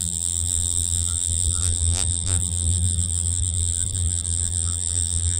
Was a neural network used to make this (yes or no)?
yes